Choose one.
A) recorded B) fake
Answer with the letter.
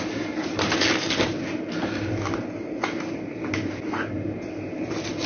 A